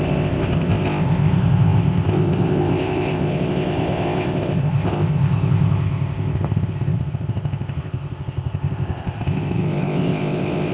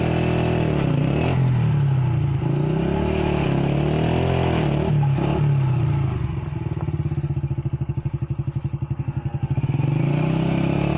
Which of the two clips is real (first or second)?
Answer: second